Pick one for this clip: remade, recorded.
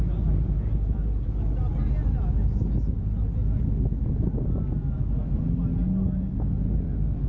recorded